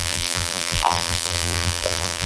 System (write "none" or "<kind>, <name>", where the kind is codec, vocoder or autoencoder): vocoder, BigVGAN v2